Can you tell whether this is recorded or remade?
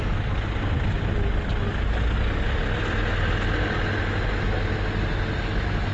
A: recorded